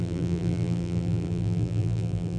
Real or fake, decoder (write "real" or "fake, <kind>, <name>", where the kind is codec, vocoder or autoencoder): fake, vocoder, BigVGAN v2